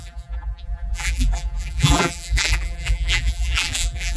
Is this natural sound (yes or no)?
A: no